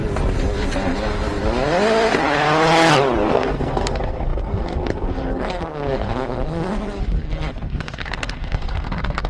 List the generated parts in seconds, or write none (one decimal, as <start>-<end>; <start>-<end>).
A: 3.3-9.3